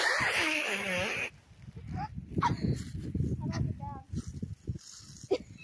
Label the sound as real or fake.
real